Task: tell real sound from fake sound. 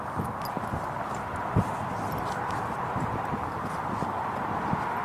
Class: real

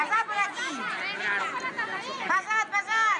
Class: real